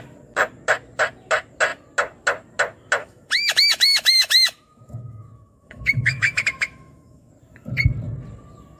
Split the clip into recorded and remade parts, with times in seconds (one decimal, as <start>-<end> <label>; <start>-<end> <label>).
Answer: 0.0-3.0 recorded; 3.0-7.3 remade; 7.3-8.8 recorded